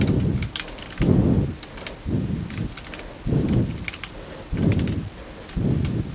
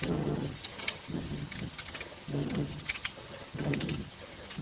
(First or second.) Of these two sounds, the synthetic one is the second